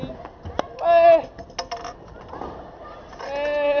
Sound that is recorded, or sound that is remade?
recorded